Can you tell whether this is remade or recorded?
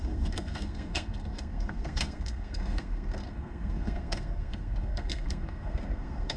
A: remade